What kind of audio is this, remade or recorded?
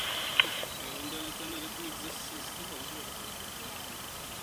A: remade